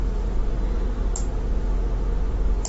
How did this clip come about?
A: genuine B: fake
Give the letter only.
A